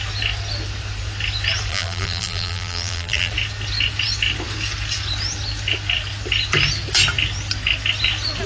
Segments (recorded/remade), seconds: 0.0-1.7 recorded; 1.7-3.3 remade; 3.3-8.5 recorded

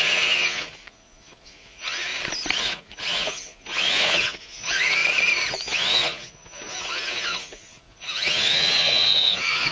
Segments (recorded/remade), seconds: 0.0-2.1 remade; 2.1-2.6 recorded; 2.6-5.0 remade; 5.0-5.5 recorded; 5.5-9.7 remade

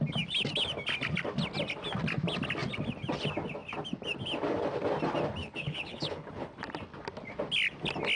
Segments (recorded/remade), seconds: 0.0-5.4 recorded; 5.4-6.6 remade; 6.6-8.2 recorded

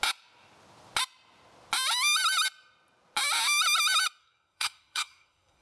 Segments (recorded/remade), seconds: 0.0-4.2 recorded; 4.2-5.6 remade

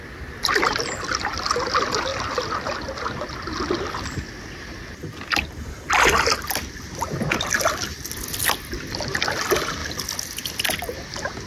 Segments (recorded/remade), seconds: 0.0-11.5 recorded